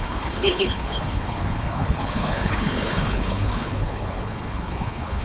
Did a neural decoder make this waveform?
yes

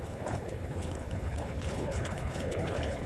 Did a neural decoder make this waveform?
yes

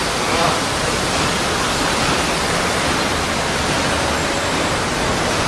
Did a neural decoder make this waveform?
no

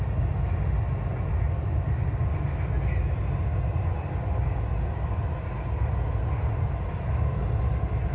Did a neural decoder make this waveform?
no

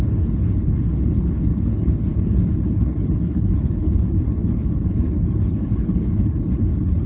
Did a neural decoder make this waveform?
yes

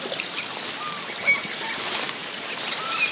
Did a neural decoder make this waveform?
no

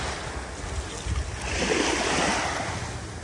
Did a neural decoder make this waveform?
no